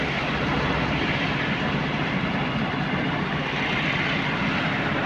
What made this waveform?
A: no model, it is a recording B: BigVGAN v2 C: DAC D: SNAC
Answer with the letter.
B